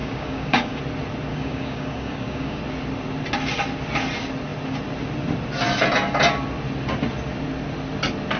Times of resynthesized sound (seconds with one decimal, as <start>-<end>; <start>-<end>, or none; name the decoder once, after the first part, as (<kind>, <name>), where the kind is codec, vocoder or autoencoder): 0.0-0.8 (codec, DAC); 1.3-2.6